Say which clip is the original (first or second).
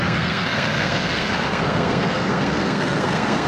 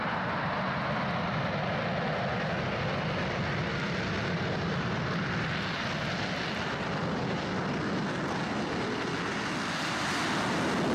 second